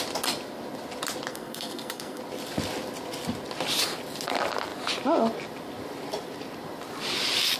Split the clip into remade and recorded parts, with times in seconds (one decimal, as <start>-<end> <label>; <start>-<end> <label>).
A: 0.0-1.3 recorded; 1.3-2.2 remade; 2.2-7.6 recorded